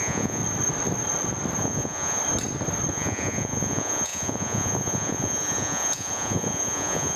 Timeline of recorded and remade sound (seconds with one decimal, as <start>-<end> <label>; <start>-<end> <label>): 0.0-0.4 remade; 0.4-1.6 recorded; 1.6-2.2 remade; 2.2-2.9 recorded; 2.9-7.2 remade